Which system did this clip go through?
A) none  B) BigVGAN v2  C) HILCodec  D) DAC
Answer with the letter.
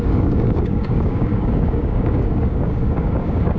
D